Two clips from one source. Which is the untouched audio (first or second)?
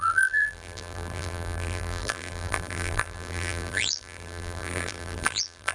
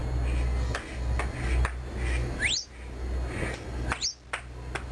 second